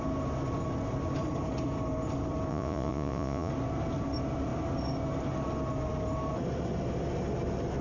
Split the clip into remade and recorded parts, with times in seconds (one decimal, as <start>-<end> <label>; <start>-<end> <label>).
0.0-2.5 recorded; 2.5-3.5 remade; 3.5-7.8 recorded